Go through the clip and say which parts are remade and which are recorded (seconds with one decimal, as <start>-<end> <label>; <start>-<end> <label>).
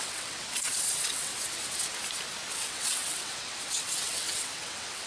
0.0-1.3 remade; 1.3-2.5 recorded; 2.5-5.1 remade